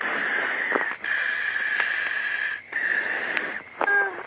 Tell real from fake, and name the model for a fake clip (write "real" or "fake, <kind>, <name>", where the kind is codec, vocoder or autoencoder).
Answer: real